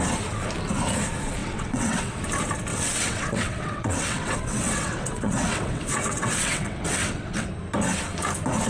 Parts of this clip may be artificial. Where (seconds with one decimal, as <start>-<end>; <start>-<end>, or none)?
1.4-2.2; 2.7-7.5